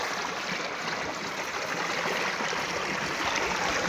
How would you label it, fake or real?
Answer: real